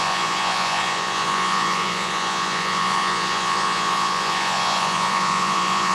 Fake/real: fake